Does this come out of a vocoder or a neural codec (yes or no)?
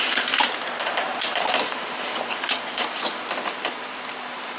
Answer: yes